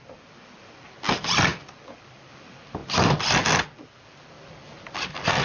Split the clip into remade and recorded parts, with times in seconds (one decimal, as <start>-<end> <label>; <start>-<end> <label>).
0.0-5.4 recorded